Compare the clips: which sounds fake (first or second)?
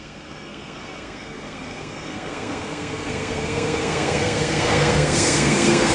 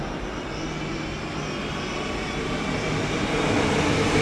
first